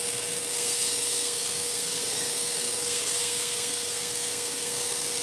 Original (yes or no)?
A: no